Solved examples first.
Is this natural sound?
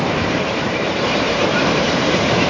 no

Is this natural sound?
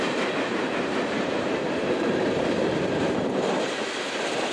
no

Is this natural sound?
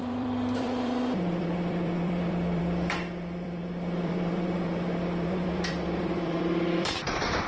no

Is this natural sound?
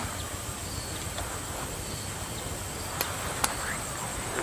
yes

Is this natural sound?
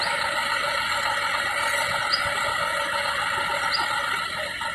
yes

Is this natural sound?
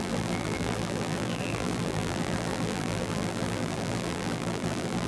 no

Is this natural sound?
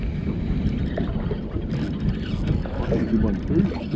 yes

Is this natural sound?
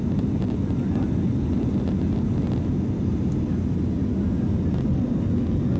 yes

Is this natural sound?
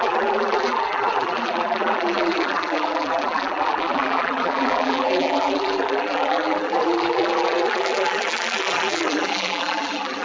no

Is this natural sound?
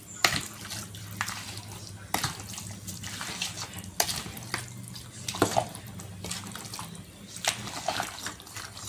yes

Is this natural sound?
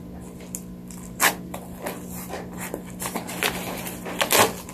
yes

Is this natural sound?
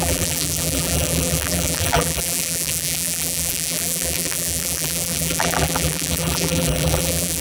no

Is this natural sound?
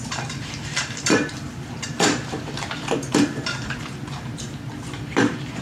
no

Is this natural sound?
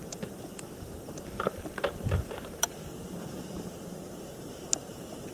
no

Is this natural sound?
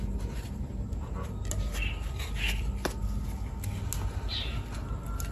yes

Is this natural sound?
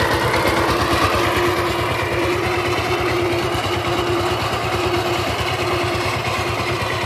yes